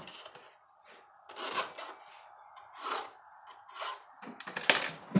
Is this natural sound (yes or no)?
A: yes